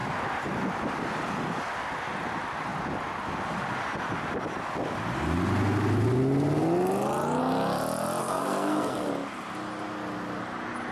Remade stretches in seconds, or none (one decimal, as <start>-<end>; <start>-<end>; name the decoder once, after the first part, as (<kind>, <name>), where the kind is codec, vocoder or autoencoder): 8.2-9.1 (codec, SNAC)